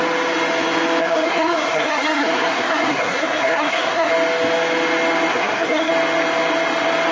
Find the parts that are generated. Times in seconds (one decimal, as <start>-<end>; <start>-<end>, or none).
1.0-4.1; 5.3-5.9

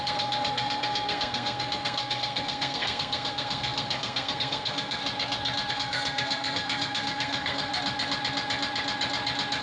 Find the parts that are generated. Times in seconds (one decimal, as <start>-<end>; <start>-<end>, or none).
0.0-5.0; 5.7-7.7